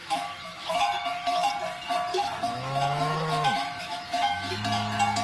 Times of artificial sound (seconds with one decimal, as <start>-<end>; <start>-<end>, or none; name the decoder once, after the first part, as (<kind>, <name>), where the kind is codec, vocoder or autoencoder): 0.0-1.5 (autoencoder, DAC-VAE); 2.1-4.5